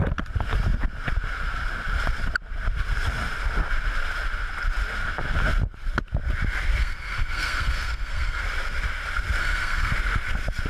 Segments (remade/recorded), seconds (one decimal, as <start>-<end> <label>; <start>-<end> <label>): 0.0-6.8 recorded; 6.8-8.4 remade; 8.4-9.4 recorded; 9.4-9.9 remade; 9.9-10.7 recorded